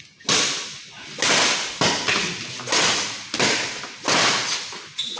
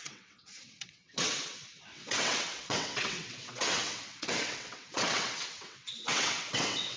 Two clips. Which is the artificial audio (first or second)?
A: second